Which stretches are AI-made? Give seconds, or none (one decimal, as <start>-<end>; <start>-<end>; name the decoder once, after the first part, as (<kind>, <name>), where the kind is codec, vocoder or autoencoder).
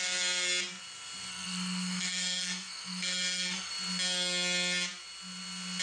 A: 1.3-3.7 (codec, SNAC)